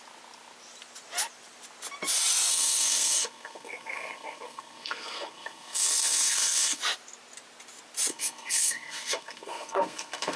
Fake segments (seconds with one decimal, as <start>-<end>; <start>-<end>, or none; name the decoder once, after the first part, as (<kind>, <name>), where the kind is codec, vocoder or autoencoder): 2.5-6.8 (codec, SNAC); 8.1-10.4